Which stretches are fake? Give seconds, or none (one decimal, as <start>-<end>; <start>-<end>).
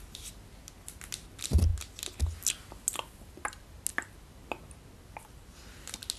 none